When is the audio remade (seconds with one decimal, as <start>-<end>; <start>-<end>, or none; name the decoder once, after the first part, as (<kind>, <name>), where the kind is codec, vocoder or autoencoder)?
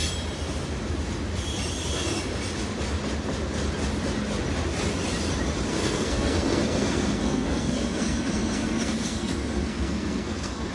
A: 5.7-10.7 (codec, SNAC)